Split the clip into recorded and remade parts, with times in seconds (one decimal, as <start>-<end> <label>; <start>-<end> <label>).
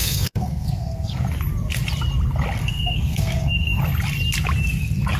0.0-1.2 remade; 1.2-2.6 recorded; 2.6-3.8 remade; 3.8-5.2 recorded